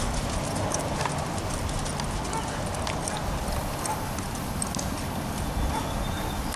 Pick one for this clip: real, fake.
real